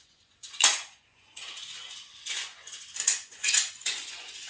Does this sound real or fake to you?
fake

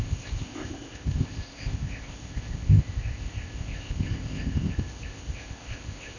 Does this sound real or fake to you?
fake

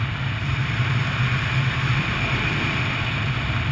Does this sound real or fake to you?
fake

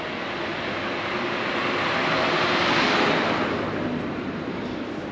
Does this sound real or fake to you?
real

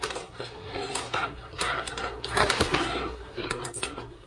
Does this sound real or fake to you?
fake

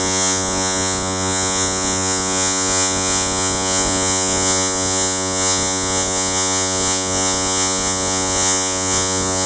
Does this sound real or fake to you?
fake